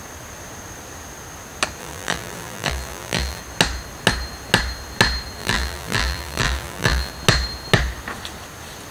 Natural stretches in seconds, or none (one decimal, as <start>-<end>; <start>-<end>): 0.0-1.8; 3.4-5.4; 7.1-8.9